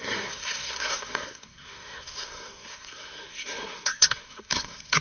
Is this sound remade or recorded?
remade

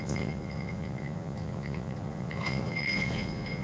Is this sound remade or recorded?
remade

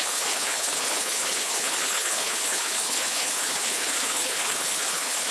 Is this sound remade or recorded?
remade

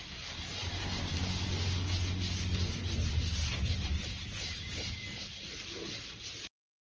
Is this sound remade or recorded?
recorded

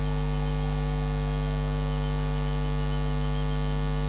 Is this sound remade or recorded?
recorded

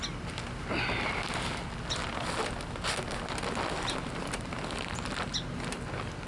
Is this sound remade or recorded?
recorded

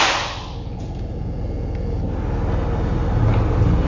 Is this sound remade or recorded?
recorded